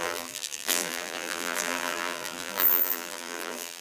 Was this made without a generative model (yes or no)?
no